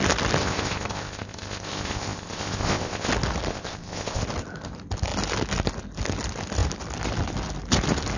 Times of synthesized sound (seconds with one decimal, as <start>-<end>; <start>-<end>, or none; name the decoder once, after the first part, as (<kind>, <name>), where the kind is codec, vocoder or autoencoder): 0.4-3.1 (codec, ZipCodec); 3.5-4.2